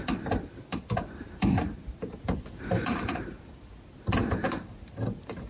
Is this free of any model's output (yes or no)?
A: no